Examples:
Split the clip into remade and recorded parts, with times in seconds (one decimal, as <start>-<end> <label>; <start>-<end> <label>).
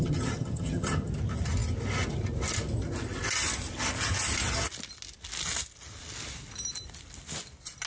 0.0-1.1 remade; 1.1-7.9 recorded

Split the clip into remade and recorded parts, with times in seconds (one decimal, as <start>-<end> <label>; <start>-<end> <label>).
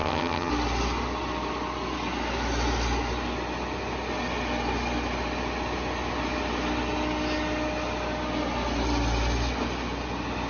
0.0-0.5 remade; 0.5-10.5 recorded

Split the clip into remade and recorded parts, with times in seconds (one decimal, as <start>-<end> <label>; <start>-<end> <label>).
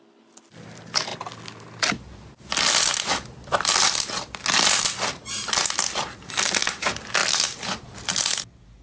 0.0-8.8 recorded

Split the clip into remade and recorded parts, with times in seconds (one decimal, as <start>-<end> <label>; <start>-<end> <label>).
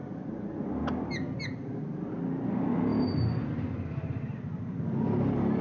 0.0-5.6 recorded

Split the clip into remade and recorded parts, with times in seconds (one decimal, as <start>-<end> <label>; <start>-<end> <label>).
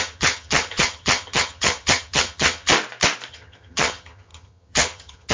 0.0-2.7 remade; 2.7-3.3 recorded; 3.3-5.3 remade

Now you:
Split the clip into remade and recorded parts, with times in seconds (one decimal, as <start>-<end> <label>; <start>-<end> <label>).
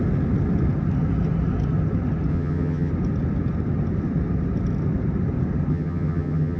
0.0-2.3 recorded; 2.3-2.9 remade; 2.9-5.7 recorded; 5.7-6.6 remade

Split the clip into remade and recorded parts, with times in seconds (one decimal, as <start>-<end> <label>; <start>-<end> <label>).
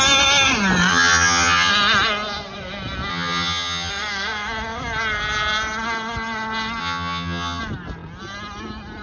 0.0-0.9 recorded; 0.9-1.7 remade; 1.7-3.1 recorded; 3.1-3.9 remade; 3.9-6.8 recorded; 6.8-7.6 remade; 7.6-9.0 recorded